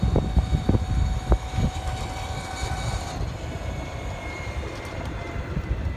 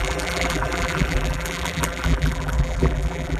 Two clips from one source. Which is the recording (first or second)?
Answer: first